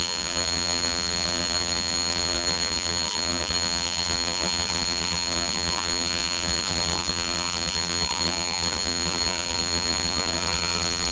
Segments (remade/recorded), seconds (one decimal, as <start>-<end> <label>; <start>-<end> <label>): 0.0-11.1 remade

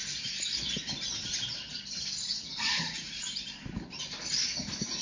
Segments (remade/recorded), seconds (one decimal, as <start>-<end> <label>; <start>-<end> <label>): 0.0-2.3 recorded; 2.3-3.2 remade; 3.2-5.0 recorded

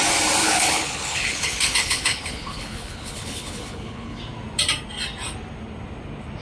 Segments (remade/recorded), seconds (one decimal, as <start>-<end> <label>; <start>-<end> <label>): 0.0-0.4 recorded; 0.4-4.2 remade; 4.2-6.4 recorded

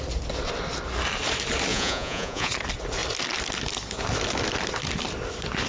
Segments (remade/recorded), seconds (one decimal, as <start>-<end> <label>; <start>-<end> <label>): 0.0-1.7 recorded; 1.7-2.5 remade; 2.5-5.7 recorded

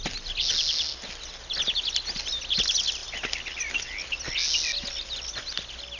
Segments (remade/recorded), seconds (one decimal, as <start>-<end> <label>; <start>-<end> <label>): 0.0-6.0 recorded